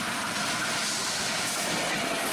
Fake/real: real